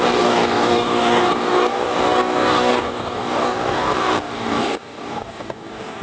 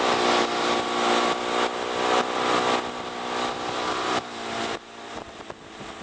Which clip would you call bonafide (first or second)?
second